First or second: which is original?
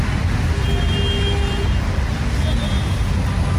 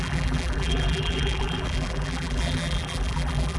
first